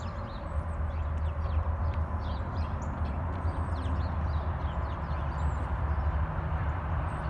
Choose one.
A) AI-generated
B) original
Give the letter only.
B